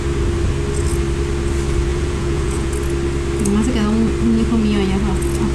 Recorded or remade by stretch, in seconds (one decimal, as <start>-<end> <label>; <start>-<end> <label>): 0.0-1.9 recorded; 1.9-2.7 remade; 2.7-5.5 recorded